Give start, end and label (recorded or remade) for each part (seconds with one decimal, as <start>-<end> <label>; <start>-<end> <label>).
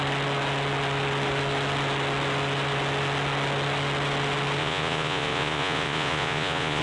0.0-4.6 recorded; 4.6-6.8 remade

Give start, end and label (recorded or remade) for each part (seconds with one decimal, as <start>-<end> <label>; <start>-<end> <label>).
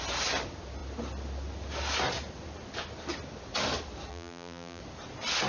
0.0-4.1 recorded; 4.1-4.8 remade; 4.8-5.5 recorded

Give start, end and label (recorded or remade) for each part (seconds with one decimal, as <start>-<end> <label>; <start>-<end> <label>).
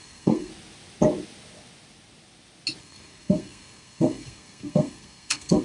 0.0-0.5 remade; 0.5-2.8 recorded; 2.8-5.6 remade